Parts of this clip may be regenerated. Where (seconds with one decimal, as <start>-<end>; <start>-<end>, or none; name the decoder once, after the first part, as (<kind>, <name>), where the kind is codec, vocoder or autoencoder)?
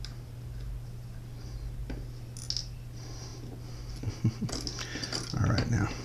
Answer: none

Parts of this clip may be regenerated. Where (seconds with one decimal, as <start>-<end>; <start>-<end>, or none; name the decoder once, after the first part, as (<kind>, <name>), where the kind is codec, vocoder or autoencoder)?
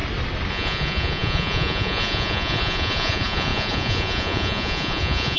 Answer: 0.5-5.4 (vocoder, Vocos)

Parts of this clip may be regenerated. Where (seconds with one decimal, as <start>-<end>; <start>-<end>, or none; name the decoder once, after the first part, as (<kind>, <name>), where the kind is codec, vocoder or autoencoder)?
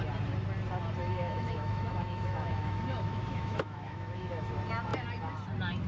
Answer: 1.0-4.5 (autoencoder, DAC-VAE)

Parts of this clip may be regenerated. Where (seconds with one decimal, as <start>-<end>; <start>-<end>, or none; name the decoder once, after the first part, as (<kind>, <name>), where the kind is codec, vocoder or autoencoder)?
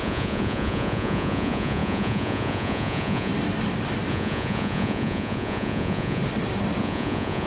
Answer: 0.0-3.3 (vocoder, Vocos); 4.1-6.2; 6.8-7.5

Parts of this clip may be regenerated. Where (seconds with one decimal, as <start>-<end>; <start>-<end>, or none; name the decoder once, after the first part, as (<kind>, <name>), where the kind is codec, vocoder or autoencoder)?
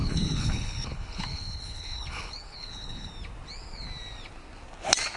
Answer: 0.0-3.1 (codec, HILCodec)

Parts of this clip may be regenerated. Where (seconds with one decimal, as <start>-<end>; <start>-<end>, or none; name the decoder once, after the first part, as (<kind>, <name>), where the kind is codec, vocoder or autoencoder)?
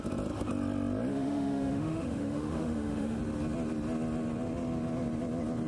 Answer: 1.1-3.2 (autoencoder, DAC-VAE)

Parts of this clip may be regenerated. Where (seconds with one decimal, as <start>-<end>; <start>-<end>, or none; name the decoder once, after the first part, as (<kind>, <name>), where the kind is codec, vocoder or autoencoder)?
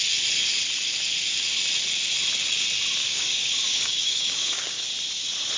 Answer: 3.0-4.8 (codec, DAC)